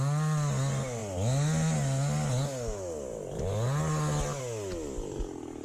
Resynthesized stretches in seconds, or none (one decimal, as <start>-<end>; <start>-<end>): none